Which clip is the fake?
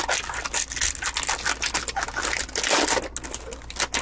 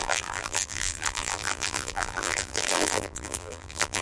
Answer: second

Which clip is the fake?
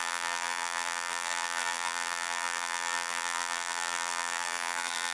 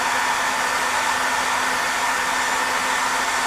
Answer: first